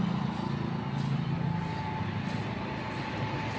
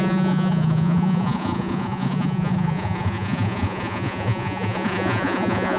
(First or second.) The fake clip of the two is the second